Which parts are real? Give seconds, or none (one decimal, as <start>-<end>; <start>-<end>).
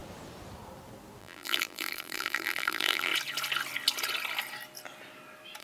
0.0-1.2; 3.1-5.6